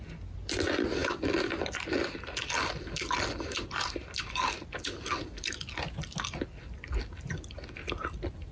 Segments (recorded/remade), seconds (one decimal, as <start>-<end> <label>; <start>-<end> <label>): 0.0-8.5 recorded